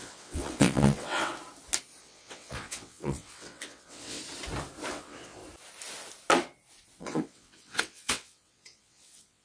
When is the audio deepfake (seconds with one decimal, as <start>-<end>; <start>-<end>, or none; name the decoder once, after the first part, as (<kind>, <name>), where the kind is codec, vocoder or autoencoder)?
0.0-1.3 (vocoder, WaveNeXt); 2.0-4.2; 4.9-5.4; 7.0-9.4